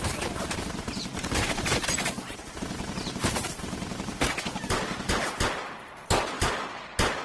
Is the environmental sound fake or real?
real